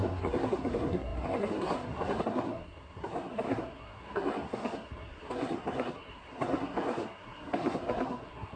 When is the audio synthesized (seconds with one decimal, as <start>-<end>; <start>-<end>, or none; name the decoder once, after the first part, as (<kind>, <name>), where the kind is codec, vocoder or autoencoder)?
0.0-8.6 (codec, SNAC)